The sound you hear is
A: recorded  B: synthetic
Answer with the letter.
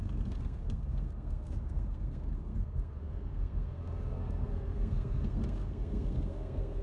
B